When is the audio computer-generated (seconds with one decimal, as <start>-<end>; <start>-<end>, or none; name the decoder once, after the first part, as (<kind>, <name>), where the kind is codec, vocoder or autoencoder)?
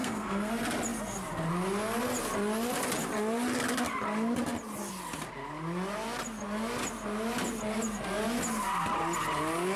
0.0-0.5 (codec, SNAC)